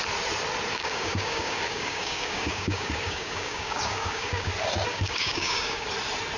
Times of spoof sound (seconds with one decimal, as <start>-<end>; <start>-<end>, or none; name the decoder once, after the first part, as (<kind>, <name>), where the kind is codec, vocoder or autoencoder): 0.7-4.5 (codec, DAC); 4.9-5.9